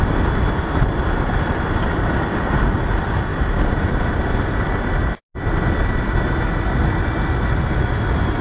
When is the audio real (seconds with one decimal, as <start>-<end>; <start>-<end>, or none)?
0.0-8.4